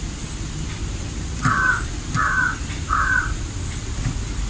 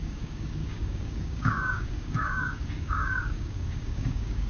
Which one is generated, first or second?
second